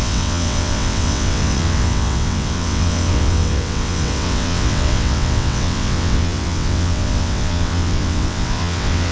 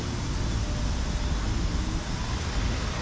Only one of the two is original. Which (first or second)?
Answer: second